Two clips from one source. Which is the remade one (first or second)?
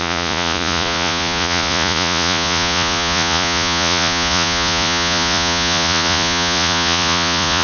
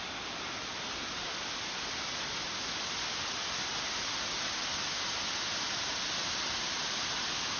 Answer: first